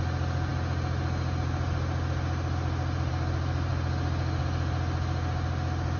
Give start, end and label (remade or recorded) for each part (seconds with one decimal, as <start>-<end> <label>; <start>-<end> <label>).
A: 0.0-6.0 recorded